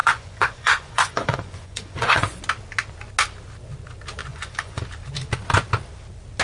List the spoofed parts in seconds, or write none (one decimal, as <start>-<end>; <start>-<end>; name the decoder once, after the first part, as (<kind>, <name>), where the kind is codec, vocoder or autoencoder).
0.0-2.4 (vocoder, Vocos); 4.2-4.8